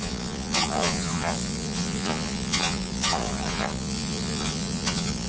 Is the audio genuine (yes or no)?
no